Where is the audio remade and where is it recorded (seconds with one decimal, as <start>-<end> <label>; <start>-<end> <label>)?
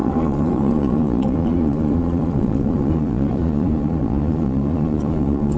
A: 0.0-5.6 remade